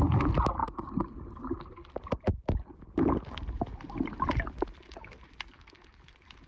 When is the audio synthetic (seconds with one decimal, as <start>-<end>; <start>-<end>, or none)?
none